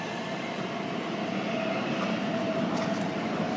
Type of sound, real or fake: fake